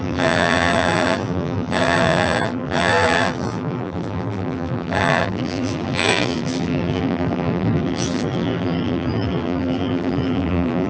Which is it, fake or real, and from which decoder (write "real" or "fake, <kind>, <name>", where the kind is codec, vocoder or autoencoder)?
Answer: fake, vocoder, BigVGAN v2